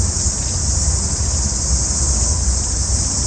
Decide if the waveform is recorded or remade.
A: recorded